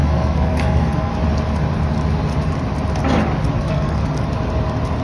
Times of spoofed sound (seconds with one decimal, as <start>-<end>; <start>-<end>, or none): 0.0-1.1; 3.6-4.0